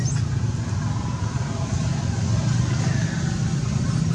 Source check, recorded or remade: recorded